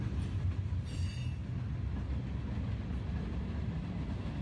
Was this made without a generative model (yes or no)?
yes